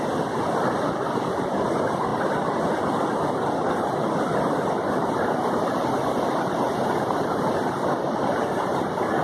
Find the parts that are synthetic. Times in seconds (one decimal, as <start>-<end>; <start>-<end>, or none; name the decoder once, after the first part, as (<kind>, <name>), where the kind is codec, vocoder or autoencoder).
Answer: none